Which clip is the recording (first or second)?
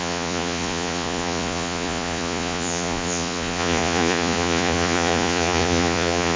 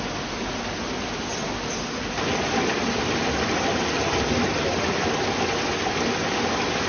second